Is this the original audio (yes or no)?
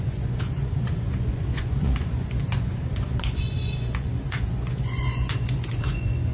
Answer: no